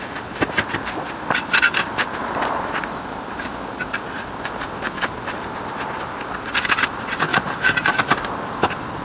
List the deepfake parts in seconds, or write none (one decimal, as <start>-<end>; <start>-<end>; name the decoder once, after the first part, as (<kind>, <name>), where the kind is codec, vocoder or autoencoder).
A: 2.2-3.0 (vocoder, BigVGAN v2); 7.3-8.0